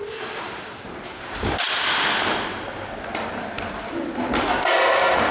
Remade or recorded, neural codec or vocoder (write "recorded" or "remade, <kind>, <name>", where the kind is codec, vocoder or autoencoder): recorded